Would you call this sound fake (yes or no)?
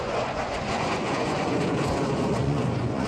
yes